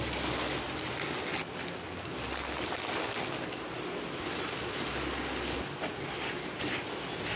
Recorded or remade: recorded